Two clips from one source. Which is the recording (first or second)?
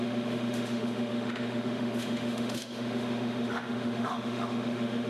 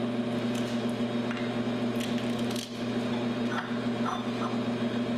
second